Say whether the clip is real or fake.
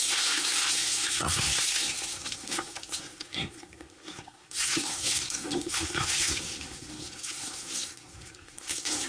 fake